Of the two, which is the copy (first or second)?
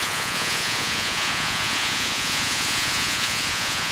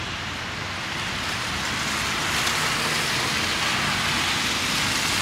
first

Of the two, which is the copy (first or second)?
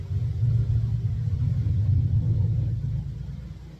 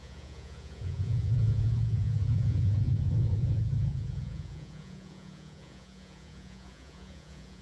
second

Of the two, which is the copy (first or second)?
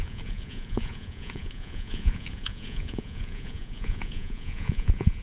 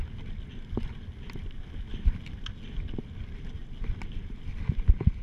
first